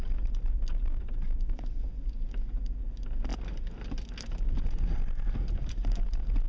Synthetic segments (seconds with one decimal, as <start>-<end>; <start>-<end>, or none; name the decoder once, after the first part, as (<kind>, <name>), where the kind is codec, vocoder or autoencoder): none